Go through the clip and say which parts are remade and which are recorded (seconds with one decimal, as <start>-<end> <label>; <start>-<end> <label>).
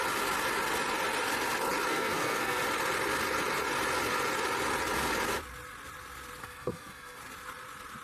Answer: 0.0-1.9 recorded; 1.9-2.6 remade; 2.6-6.4 recorded; 6.4-7.2 remade; 7.2-8.0 recorded